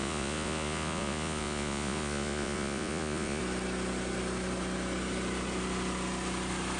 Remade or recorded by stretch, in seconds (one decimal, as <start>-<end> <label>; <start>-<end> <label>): 0.0-3.4 remade; 3.4-6.8 recorded